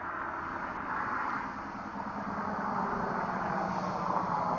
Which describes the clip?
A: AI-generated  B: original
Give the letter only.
B